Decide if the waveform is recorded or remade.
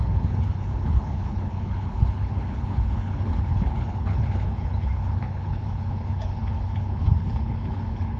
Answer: remade